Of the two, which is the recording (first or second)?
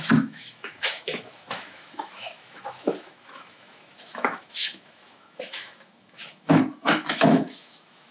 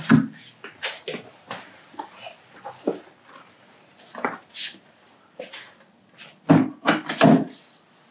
second